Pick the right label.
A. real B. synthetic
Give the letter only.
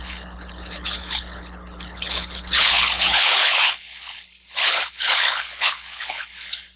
B